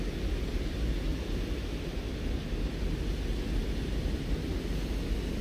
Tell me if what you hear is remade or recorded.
recorded